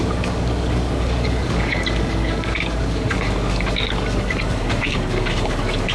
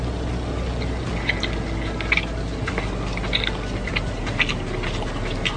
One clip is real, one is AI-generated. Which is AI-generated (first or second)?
first